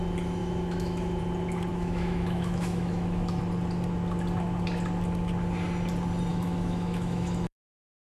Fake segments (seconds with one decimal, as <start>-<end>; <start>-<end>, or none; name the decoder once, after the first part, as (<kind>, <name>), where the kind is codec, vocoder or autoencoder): 0.4-1.2 (autoencoder, DAC-VAE); 1.7-3.4; 6.3-8.2